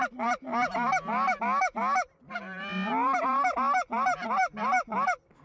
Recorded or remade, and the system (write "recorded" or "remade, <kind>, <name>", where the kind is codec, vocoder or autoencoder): recorded